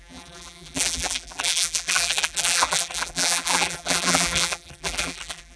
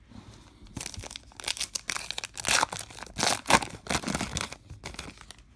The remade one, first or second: first